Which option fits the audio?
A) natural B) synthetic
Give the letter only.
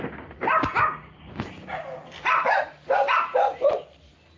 A